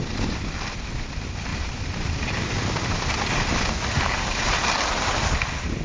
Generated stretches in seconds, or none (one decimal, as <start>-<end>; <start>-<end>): none